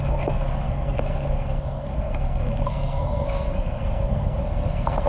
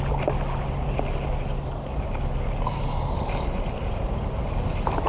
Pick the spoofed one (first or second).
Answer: first